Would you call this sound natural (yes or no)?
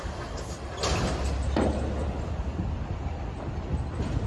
yes